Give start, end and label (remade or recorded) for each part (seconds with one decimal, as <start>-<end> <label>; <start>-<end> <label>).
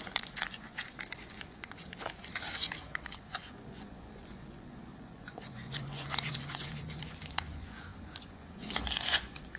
0.0-9.6 remade